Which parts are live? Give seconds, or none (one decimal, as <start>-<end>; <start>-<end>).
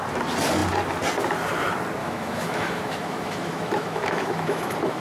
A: 0.0-2.0